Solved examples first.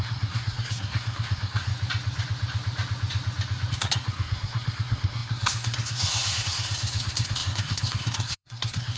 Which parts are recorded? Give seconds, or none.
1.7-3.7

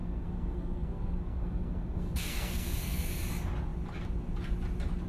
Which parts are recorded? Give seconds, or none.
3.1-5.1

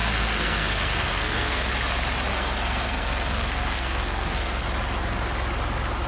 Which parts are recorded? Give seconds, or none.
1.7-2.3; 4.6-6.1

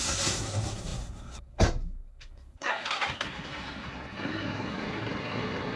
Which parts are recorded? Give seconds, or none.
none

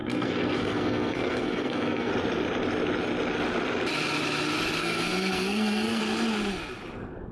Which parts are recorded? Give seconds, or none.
2.1-4.8; 6.0-7.3

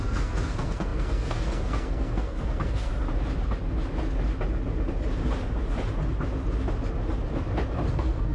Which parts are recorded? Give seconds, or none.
2.9-7.9

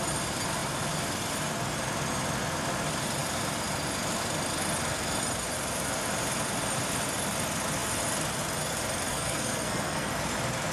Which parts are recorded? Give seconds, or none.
0.0-9.1; 10.1-10.7